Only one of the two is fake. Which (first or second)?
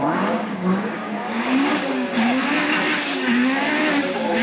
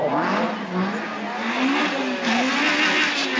first